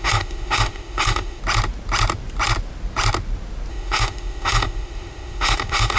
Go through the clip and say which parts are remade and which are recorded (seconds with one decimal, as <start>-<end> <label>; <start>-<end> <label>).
0.0-1.4 remade; 1.4-3.7 recorded; 3.7-6.0 remade